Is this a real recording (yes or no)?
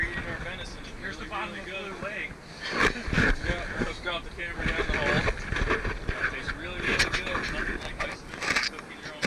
yes